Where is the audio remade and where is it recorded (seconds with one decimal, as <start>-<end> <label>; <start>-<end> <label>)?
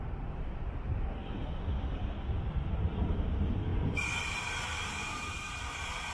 0.0-1.4 remade; 1.4-2.6 recorded; 2.6-3.7 remade; 3.7-4.2 recorded; 4.2-6.1 remade